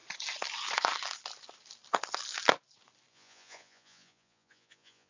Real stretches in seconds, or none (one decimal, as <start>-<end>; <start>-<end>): 0.0-3.1